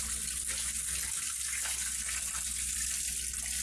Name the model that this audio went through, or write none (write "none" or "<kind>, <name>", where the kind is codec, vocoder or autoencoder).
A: none